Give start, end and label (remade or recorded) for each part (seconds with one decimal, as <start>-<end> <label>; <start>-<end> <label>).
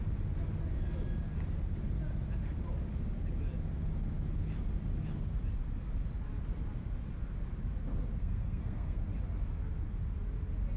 0.0-8.2 recorded; 8.2-9.0 remade; 9.0-10.8 recorded